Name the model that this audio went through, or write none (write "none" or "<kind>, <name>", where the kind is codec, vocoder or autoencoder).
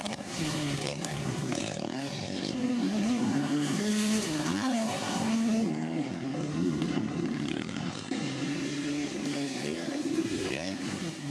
codec, SNAC